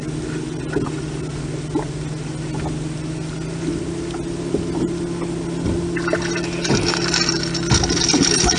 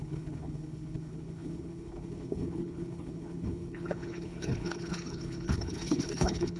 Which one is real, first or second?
first